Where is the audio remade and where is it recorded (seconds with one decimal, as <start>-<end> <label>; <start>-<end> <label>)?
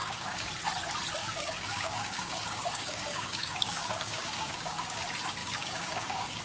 0.0-0.5 remade; 0.5-1.2 recorded; 1.2-5.0 remade; 5.0-5.4 recorded; 5.4-6.4 remade